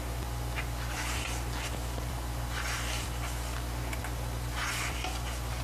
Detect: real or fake real